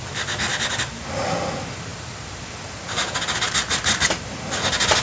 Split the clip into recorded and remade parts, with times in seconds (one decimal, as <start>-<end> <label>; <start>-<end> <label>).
0.0-5.0 recorded